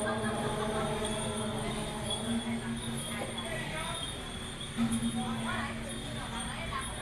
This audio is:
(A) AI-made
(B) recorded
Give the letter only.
B